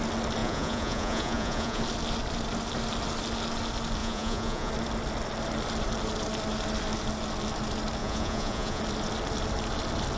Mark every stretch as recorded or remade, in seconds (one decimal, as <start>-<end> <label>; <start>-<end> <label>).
0.0-0.4 recorded; 0.4-1.8 remade; 1.8-4.0 recorded; 4.0-4.7 remade; 4.7-8.0 recorded; 8.0-8.8 remade; 8.8-10.2 recorded